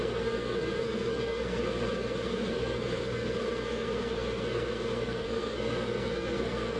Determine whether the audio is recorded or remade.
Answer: remade